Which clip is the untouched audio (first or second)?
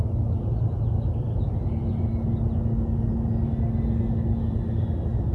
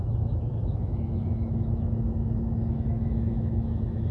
first